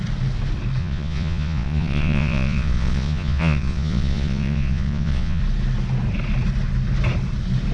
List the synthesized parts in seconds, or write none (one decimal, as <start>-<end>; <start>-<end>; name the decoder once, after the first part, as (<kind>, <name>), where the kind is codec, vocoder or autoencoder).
0.8-5.4 (vocoder, Vocos)